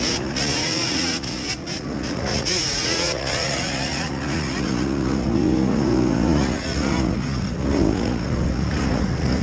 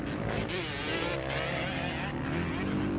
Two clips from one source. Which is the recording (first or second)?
second